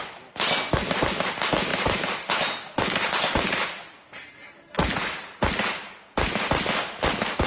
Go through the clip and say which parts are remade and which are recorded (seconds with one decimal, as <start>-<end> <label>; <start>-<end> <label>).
0.0-7.5 recorded